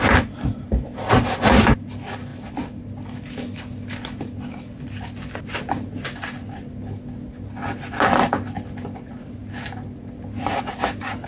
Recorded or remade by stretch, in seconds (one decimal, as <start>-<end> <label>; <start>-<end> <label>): 0.0-11.3 recorded